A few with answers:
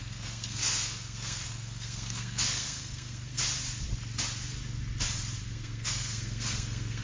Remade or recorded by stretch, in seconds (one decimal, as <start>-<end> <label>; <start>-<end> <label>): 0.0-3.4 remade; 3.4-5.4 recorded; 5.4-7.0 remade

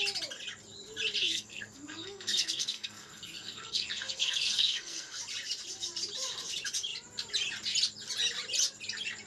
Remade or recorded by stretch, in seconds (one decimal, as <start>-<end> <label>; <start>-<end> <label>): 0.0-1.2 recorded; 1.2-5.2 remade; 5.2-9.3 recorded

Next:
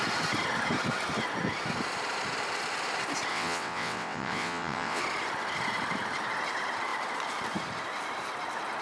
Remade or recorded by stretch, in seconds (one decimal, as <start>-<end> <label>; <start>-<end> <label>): 0.0-3.3 recorded; 3.3-5.0 remade; 5.0-8.8 recorded